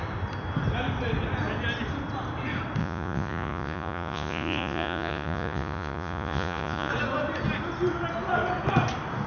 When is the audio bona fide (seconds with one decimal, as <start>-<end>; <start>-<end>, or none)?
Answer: 0.0-2.8; 6.9-9.3